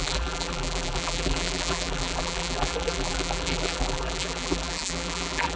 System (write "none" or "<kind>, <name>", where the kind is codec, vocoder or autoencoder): vocoder, BigVGAN v2